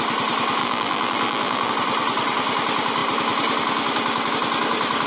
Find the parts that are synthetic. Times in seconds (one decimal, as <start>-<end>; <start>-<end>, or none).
0.6-1.7

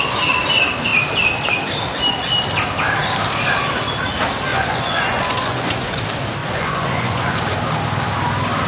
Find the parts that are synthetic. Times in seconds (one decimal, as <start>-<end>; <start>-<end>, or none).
4.5-6.0; 6.4-7.4

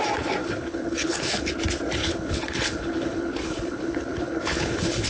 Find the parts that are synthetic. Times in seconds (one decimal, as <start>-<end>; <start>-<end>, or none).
0.4-1.5; 2.0-5.1